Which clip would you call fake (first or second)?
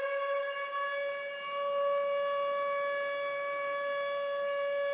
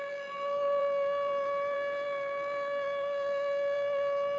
second